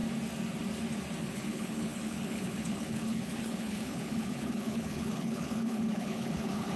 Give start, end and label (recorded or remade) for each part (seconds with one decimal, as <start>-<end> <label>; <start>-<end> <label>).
0.0-1.2 recorded; 1.2-6.8 remade